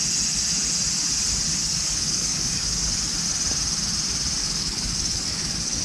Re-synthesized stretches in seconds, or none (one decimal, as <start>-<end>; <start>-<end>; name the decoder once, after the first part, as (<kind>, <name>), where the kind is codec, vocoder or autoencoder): 1.5-2.9 (codec, DAC); 4.4-5.8